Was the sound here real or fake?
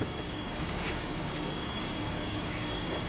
fake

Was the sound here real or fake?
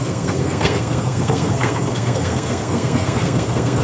fake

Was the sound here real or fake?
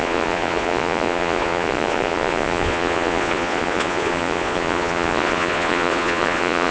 fake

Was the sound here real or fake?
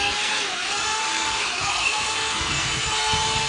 fake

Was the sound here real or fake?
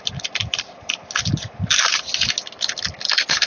real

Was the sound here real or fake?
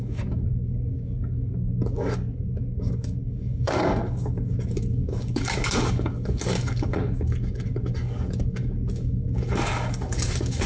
fake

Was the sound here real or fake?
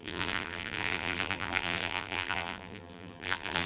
fake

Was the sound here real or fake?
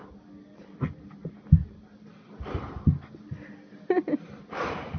real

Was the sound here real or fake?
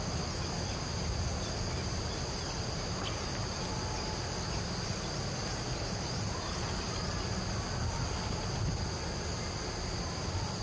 real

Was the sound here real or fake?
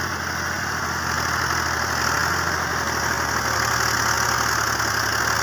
real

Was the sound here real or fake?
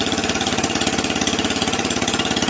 fake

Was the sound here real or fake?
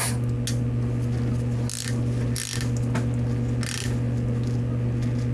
real